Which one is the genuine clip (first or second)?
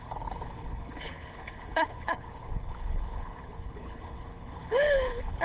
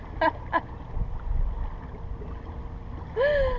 second